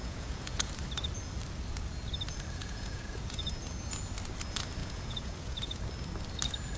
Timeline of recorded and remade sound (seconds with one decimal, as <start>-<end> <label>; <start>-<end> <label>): 0.0-0.7 remade; 0.7-2.6 recorded; 2.6-3.6 remade; 3.6-4.8 recorded; 4.8-5.8 remade; 5.8-6.8 recorded